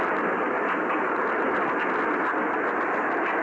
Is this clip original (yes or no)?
yes